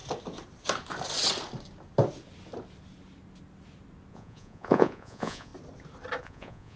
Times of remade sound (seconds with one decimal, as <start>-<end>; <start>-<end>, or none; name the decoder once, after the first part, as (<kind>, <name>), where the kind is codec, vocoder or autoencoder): 4.1-5.5 (vocoder, Vocos); 6.2-6.8